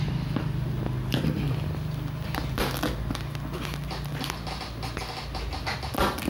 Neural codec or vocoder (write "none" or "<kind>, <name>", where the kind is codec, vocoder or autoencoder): none